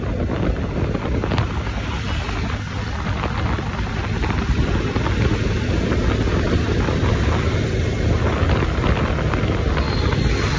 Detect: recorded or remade recorded